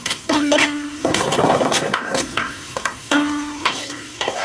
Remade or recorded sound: remade